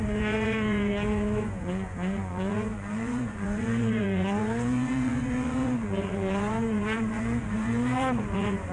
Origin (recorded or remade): remade